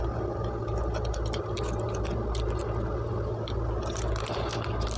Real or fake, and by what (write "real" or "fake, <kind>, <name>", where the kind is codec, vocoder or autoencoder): real